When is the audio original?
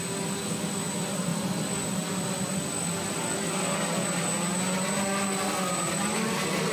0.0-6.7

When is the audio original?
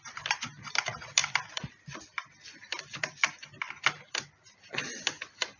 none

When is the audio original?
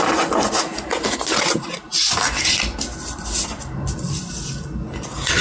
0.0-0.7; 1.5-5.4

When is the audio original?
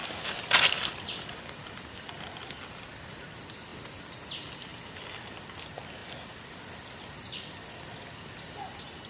0.0-6.0; 8.6-9.1